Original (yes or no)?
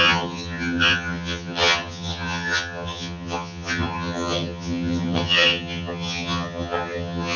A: no